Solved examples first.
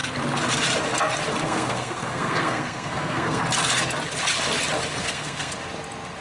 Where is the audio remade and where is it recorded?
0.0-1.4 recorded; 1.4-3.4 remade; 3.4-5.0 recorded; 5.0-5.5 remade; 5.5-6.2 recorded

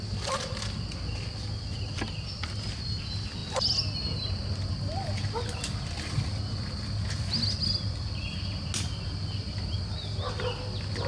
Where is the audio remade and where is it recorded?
0.0-11.1 recorded

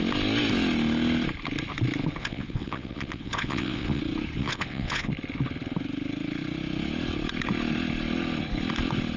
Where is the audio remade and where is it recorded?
0.0-2.2 recorded; 2.2-4.0 remade; 4.0-4.4 recorded; 4.4-5.1 remade; 5.1-9.2 recorded